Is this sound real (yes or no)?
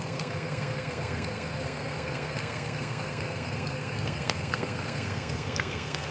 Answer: no